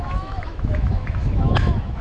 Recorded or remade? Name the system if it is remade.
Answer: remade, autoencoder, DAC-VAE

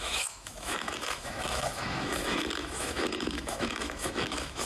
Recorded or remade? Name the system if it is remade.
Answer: remade, autoencoder, DAC-VAE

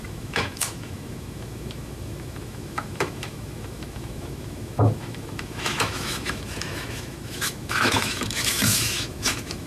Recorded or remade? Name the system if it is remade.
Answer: remade, autoencoder, DAC-VAE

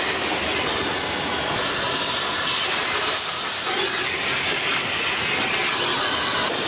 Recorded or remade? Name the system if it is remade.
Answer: recorded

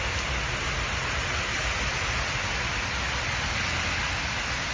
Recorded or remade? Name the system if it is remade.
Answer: recorded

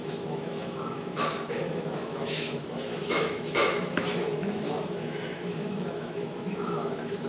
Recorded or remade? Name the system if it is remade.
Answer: remade, autoencoder, DAC-VAE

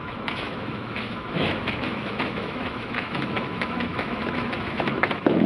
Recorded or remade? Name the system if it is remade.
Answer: remade, autoencoder, DAC-VAE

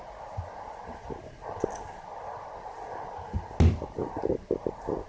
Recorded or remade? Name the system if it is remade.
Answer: recorded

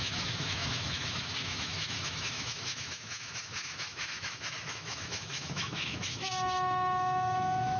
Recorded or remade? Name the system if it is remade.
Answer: remade, autoencoder, DAC-VAE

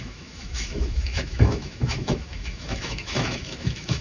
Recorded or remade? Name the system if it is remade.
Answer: remade, autoencoder, DAC-VAE